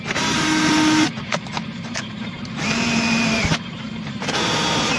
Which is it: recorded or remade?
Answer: remade